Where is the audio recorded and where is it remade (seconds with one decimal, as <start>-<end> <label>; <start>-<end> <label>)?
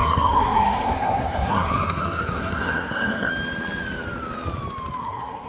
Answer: 0.0-3.3 remade; 3.3-5.0 recorded; 5.0-5.5 remade